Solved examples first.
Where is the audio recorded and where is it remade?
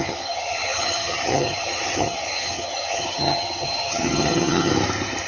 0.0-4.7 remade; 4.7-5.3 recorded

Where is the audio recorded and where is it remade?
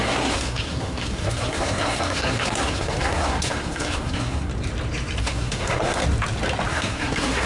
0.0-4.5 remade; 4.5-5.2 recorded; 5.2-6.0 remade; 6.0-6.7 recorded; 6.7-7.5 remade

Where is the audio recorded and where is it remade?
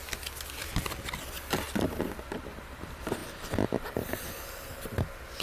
0.0-5.4 recorded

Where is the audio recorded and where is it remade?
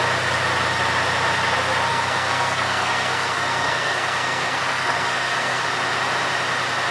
0.0-1.9 recorded; 1.9-5.6 remade; 5.6-6.9 recorded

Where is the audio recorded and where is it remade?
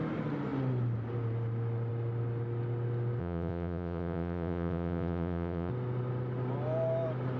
0.0-3.2 recorded; 3.2-5.7 remade; 5.7-7.4 recorded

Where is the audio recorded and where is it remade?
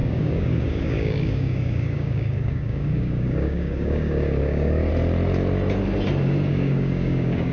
0.0-4.9 remade; 4.9-6.5 recorded; 6.5-7.5 remade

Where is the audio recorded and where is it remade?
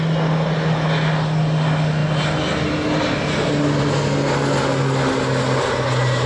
0.0-6.3 recorded